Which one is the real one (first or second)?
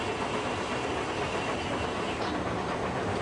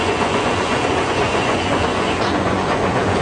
first